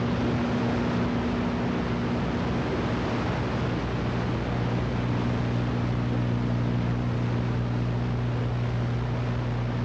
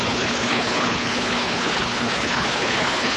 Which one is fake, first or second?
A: second